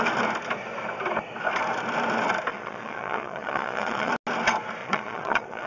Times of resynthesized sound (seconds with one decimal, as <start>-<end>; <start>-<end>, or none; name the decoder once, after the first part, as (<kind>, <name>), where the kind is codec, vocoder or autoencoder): 2.5-4.1 (vocoder, Vocos); 4.8-5.7

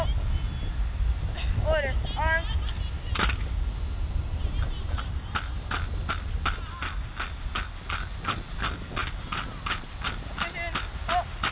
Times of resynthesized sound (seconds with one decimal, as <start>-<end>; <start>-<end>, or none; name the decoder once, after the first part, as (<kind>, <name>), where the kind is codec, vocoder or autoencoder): none

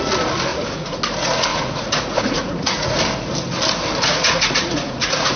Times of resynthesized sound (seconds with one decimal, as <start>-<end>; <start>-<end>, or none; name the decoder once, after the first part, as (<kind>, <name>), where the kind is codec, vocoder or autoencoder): 0.5-1.0 (vocoder, Vocos); 1.5-3.0; 4.1-5.4

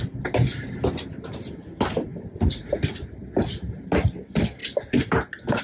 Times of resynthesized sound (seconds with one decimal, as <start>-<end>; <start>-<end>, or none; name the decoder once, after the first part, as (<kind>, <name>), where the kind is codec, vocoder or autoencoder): none

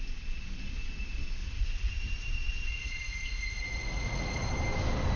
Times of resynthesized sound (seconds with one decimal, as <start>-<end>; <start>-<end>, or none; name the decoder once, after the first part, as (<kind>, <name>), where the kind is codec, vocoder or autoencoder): 1.4-4.5 (vocoder, Vocos)

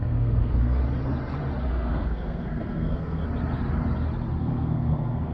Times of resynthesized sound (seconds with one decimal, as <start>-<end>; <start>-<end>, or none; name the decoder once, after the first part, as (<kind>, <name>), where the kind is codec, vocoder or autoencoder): 0.0-0.8 (codec, SNAC); 1.7-3.2; 4.4-5.3

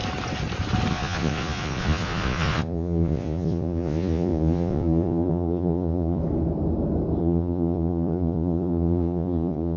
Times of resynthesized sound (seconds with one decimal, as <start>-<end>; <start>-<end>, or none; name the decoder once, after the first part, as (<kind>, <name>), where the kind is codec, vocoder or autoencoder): 0.9-6.2 (vocoder, Vocos); 7.2-9.8

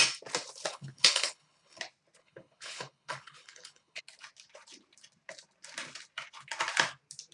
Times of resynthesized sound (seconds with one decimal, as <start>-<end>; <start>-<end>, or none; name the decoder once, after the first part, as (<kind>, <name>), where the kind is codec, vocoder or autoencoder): 0.7-1.8 (codec, HILCodec); 2.2-4.0